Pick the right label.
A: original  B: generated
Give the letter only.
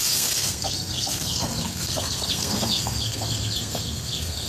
B